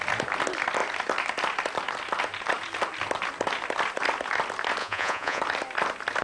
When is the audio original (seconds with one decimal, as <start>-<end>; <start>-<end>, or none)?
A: 0.0-4.8; 5.4-6.2